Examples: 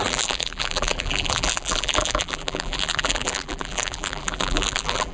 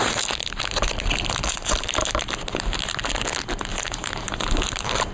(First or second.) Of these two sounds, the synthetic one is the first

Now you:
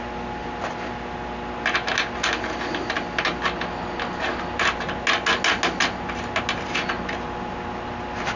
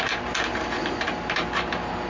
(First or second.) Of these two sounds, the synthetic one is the second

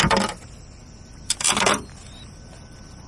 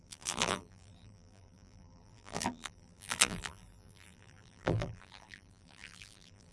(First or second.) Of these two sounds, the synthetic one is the second